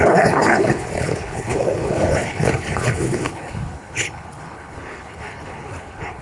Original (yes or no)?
no